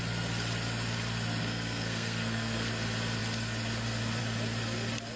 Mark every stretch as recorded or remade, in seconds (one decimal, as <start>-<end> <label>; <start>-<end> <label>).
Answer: 0.0-1.4 recorded; 1.4-2.7 remade; 2.7-5.2 recorded